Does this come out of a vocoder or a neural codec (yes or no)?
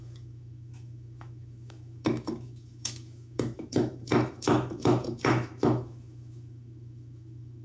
yes